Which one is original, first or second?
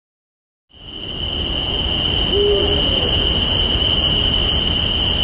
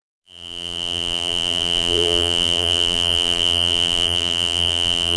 first